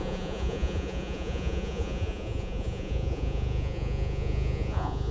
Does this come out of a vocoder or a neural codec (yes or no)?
yes